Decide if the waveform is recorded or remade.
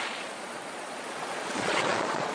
remade